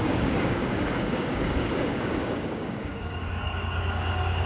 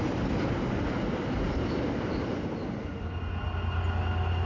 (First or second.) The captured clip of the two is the second